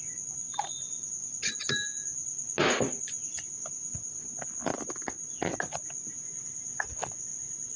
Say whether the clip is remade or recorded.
recorded